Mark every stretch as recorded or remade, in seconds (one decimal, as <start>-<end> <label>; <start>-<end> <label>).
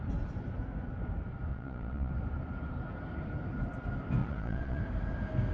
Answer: 0.0-1.5 recorded; 1.5-2.1 remade; 2.1-4.2 recorded; 4.2-4.8 remade; 4.8-5.5 recorded